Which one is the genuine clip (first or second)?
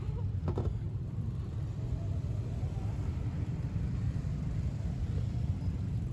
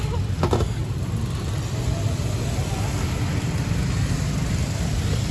second